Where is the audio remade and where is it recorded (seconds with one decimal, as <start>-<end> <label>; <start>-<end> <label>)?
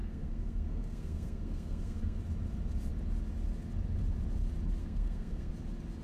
0.0-2.2 remade; 2.2-4.8 recorded; 4.8-5.5 remade; 5.5-6.0 recorded